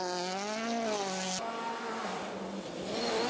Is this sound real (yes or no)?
yes